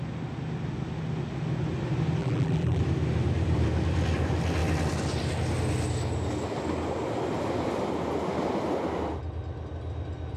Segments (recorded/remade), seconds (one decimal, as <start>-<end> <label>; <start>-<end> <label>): 0.0-2.2 recorded; 2.2-2.8 remade; 2.8-10.4 recorded